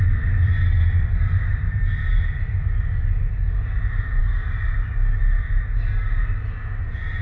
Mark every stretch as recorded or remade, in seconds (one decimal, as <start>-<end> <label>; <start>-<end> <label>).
0.0-7.2 recorded